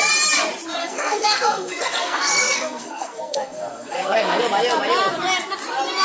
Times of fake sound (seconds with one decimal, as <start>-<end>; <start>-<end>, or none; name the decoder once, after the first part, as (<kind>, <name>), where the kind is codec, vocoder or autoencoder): 0.8-4.4 (codec, SNAC)